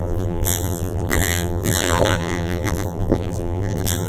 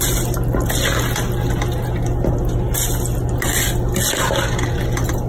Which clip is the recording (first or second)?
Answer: second